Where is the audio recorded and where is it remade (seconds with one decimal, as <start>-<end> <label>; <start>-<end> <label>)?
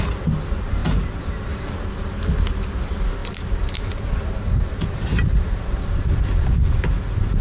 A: 0.0-0.8 recorded; 0.8-1.7 remade; 1.7-3.2 recorded; 3.2-6.5 remade; 6.5-7.4 recorded